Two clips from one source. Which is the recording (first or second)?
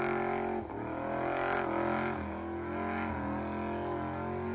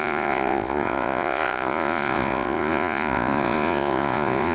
first